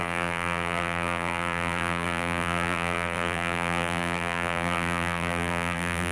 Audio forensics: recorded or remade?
remade